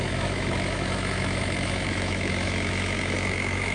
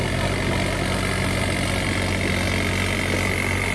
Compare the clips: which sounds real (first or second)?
second